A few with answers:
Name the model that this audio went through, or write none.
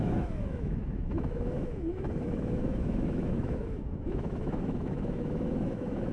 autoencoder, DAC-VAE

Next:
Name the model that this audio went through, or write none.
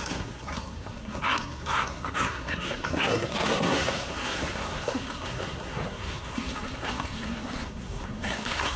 codec, SNAC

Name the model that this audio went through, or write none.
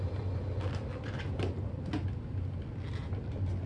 none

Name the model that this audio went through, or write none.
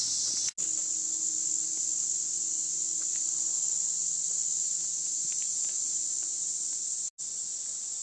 none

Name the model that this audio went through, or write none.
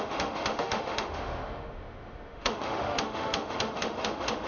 autoencoder, DAC-VAE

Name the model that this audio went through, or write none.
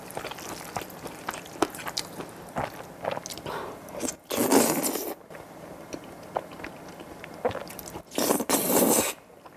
none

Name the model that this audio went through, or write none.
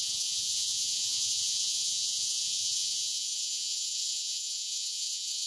vocoder, Vocos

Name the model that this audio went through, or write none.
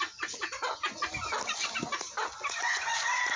none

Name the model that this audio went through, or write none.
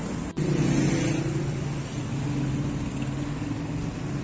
none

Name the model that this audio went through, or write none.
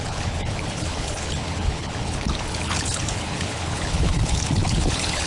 codec, HILCodec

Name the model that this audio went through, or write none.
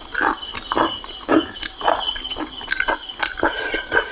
none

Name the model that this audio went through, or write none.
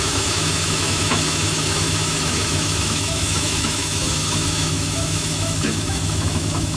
autoencoder, DAC-VAE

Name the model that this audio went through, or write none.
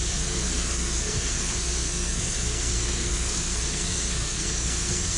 codec, SNAC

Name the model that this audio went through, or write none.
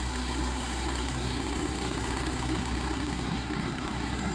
codec, SNAC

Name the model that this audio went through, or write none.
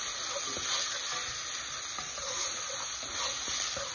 none